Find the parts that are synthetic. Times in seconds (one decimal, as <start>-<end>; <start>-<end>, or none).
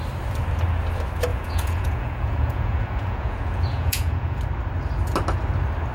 1.3-4.4